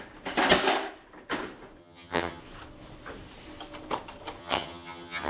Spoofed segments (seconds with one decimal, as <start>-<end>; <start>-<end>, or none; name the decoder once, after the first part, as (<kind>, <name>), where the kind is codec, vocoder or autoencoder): 1.8-2.4 (vocoder, HiFi-GAN); 4.4-5.3